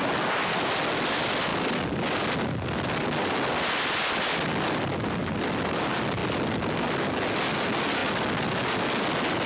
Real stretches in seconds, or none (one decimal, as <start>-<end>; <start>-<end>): 0.0-9.5